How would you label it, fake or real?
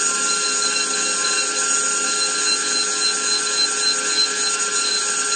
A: real